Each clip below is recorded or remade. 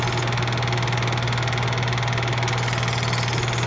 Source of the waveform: recorded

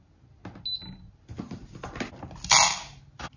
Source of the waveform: recorded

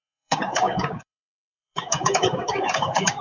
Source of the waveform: remade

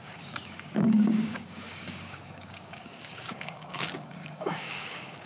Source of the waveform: remade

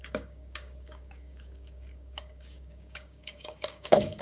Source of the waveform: remade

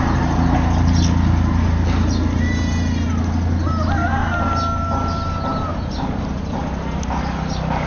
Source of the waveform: recorded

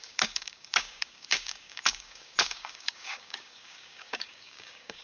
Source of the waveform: remade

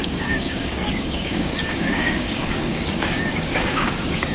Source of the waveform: remade